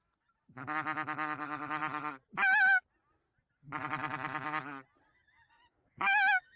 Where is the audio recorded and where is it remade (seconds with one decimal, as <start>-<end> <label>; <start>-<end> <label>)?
0.0-5.1 recorded; 5.1-6.6 remade